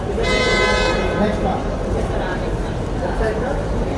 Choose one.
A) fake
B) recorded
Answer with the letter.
A